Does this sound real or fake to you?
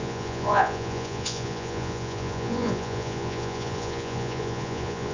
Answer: fake